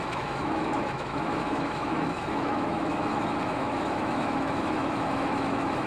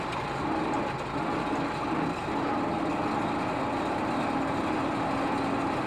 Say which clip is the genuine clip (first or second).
second